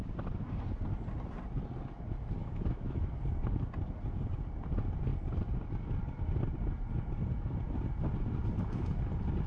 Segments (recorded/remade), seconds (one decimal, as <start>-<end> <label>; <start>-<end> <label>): 0.0-2.4 recorded; 2.4-3.1 remade; 3.1-9.5 recorded